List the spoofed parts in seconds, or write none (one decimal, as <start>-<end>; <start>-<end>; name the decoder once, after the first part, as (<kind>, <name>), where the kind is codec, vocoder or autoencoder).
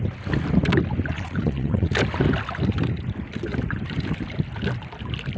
1.1-1.9 (vocoder, Vocos)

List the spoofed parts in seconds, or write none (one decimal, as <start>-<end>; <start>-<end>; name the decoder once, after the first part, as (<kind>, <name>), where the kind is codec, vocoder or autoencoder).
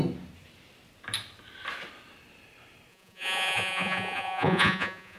2.9-5.2 (vocoder, Vocos)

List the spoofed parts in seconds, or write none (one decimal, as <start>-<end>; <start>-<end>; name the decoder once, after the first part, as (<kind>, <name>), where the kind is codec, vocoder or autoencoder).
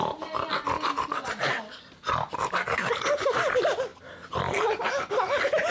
none